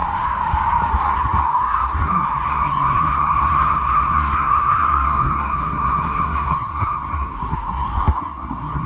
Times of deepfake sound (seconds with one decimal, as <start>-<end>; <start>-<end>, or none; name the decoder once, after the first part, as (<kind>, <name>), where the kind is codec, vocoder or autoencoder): 0.9-8.9 (codec, SNAC)